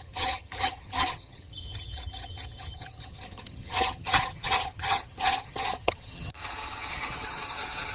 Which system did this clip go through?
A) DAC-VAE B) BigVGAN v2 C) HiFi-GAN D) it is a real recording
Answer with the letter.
C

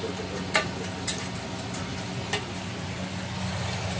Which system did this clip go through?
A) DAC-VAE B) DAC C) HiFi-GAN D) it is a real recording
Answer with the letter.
D